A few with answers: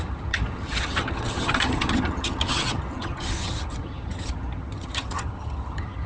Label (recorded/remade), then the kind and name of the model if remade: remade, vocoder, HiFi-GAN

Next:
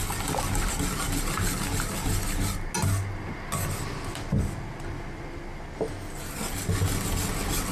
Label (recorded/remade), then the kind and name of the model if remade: recorded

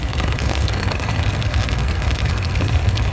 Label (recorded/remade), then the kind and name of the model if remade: remade, codec, SNAC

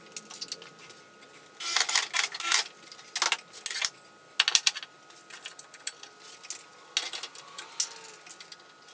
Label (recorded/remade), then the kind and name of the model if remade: recorded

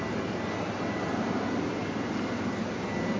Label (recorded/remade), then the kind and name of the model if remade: recorded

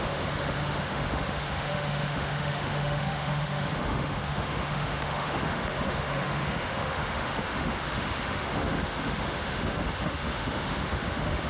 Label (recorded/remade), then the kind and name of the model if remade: remade, autoencoder, DAC-VAE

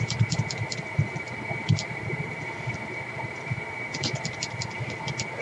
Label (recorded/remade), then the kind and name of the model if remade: remade, vocoder, BigVGAN v2